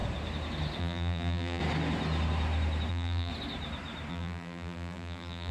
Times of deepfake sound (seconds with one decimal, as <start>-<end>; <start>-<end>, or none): 0.8-1.6; 2.9-3.3; 4.1-5.5